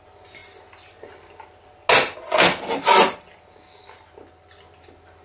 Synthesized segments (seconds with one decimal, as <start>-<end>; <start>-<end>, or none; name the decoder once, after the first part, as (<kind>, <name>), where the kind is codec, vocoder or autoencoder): none

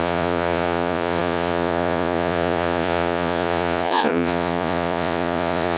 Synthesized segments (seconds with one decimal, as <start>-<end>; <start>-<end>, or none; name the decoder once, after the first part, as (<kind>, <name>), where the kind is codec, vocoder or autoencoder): 0.0-5.8 (vocoder, Vocos)

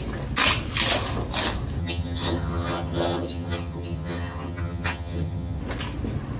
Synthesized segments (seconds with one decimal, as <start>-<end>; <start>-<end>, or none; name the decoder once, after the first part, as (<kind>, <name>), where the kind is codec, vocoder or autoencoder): 1.8-5.6 (vocoder, HiFi-GAN)

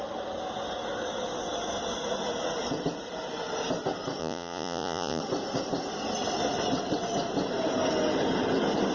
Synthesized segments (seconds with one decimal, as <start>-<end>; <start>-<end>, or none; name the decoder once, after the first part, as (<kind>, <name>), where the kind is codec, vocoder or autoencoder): 4.2-5.2 (vocoder, Vocos)

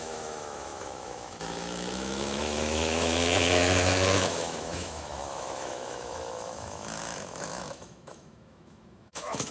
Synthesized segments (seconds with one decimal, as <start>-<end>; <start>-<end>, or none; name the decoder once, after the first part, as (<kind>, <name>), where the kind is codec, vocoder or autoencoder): 0.0-9.5 (autoencoder, DAC-VAE)